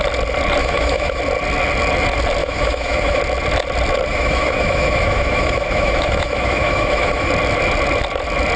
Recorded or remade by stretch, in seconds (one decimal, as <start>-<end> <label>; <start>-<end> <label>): 0.0-0.6 recorded; 0.6-1.2 remade; 1.2-2.4 recorded; 2.4-3.2 remade; 3.2-4.1 recorded; 4.1-7.3 remade; 7.3-8.6 recorded